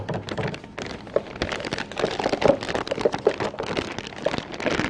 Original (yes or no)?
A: yes